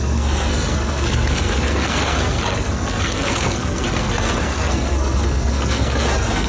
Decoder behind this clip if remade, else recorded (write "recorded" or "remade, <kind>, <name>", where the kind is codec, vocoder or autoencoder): remade, codec, SNAC